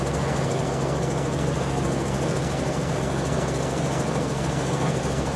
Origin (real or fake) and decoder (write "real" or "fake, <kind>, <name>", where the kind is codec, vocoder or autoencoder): fake, codec, SNAC